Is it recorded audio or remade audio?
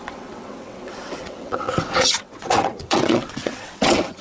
remade